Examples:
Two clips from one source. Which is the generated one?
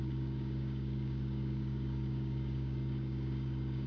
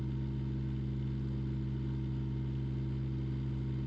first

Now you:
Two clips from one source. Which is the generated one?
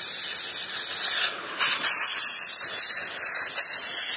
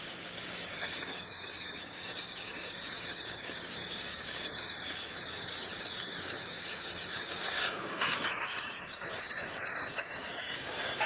second